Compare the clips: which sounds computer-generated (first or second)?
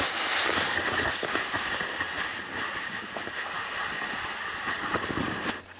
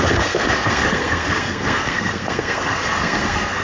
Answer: second